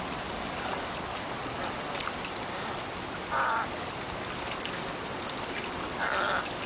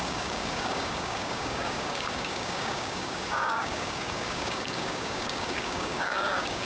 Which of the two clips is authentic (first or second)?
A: first